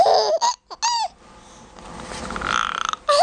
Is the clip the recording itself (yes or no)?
yes